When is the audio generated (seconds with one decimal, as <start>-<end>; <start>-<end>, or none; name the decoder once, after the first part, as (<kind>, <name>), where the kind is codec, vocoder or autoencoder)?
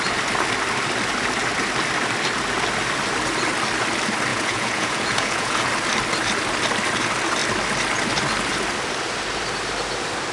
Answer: 4.3-5.7 (vocoder, Vocos)